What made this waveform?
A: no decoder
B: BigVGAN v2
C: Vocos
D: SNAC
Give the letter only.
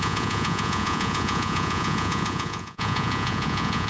C